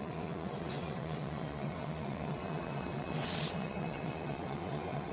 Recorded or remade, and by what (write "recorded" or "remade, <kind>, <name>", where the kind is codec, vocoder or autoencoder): remade, vocoder, WaveNeXt